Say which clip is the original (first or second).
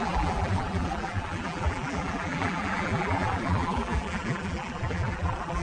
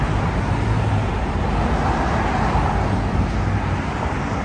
second